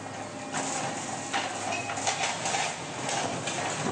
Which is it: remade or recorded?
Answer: recorded